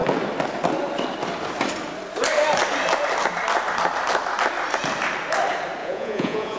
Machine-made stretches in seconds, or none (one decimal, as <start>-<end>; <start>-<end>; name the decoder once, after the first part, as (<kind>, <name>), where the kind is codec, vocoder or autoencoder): 5.8-6.6 (vocoder, Vocos)